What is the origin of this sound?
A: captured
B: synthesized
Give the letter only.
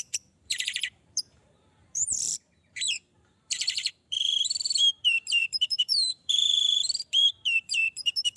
B